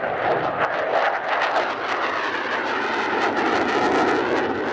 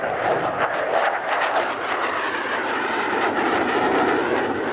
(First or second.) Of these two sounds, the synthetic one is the second